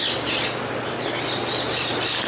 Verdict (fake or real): real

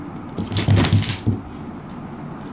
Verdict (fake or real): real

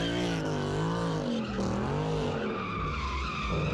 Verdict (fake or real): real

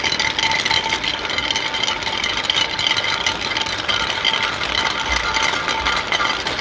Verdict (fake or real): real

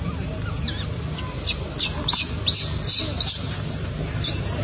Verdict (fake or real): real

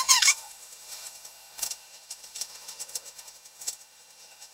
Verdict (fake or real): fake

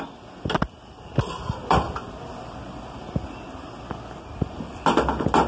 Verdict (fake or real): real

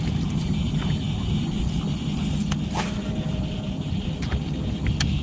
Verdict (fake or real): real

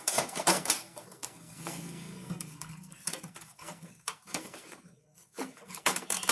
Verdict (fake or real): fake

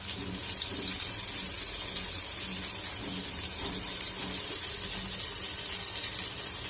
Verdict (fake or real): real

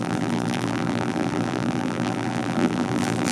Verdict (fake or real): fake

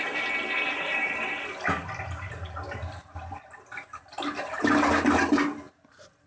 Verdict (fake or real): real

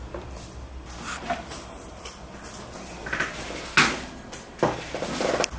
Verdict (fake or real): real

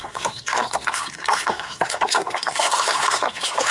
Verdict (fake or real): fake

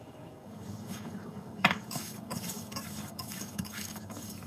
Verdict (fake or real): fake